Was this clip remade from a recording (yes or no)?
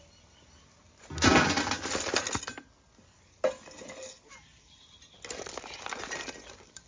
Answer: no